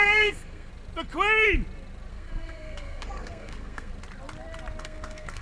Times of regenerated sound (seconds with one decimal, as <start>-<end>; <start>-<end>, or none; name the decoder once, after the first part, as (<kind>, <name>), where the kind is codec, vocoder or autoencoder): 0.0-0.7 (codec, SNAC); 2.1-3.9; 4.8-5.4

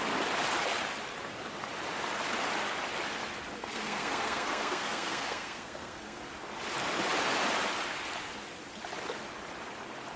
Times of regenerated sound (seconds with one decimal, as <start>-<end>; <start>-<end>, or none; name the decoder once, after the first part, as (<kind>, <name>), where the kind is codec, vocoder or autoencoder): 3.6-6.2 (codec, SNAC)

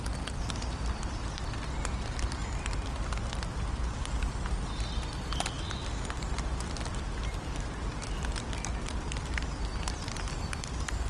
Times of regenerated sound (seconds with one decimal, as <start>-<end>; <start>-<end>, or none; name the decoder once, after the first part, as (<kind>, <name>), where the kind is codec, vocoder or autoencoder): 0.0-2.4 (vocoder, BigVGAN v2); 7.3-11.1

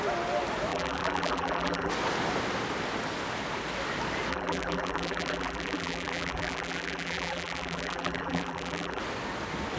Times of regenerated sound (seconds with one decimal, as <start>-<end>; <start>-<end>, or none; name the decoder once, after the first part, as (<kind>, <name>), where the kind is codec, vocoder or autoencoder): 0.7-1.9 (vocoder, BigVGAN v2); 4.3-9.0

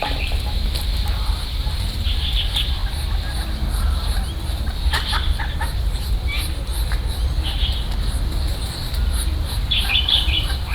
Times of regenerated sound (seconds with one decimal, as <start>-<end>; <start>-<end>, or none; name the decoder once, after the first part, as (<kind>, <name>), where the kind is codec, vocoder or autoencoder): 0.0-2.8 (vocoder, BigVGAN v2); 5.4-6.7; 9.5-10.7

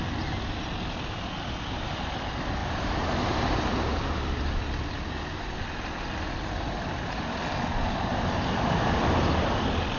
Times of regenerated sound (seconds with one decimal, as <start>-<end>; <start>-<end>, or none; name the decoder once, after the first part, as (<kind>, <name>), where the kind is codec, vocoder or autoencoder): 2.6-4.6 (vocoder, BigVGAN v2); 8.1-9.0

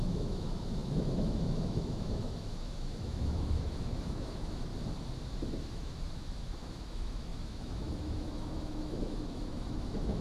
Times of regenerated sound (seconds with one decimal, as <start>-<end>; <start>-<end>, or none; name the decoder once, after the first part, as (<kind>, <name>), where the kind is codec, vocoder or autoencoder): 0.0-4.7 (autoencoder, DAC-VAE); 5.6-10.2

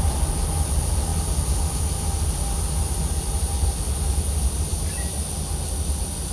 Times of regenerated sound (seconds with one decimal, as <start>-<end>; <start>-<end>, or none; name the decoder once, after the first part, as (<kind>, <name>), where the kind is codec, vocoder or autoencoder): none